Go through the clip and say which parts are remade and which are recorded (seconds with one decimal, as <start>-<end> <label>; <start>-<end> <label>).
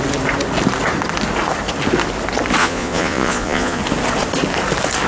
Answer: 0.0-2.6 recorded; 2.6-3.8 remade; 3.8-5.1 recorded